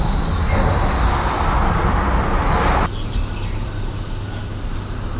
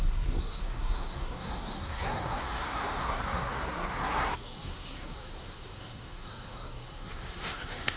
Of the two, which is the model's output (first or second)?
second